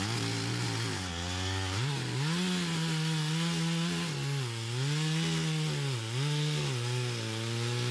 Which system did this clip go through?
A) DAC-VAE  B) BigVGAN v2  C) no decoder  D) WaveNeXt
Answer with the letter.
C